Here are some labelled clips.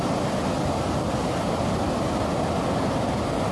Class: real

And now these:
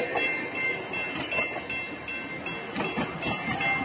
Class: real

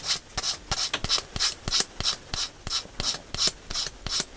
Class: real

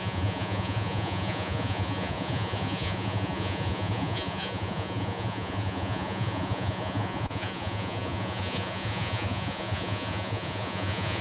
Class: fake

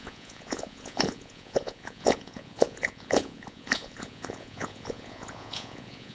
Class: fake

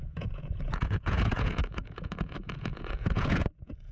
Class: fake